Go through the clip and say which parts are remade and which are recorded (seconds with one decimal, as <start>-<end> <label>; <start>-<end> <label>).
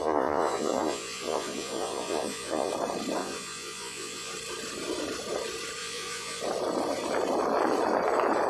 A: 0.0-2.7 remade; 2.7-3.2 recorded; 3.2-4.3 remade; 4.3-5.8 recorded; 5.8-6.4 remade; 6.4-8.5 recorded